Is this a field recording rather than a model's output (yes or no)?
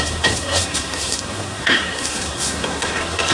no